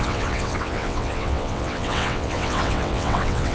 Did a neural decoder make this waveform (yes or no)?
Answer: yes